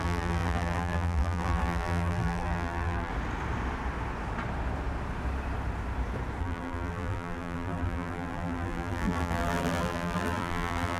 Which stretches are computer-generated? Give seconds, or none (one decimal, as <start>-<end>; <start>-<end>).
0.0-3.1; 6.4-11.0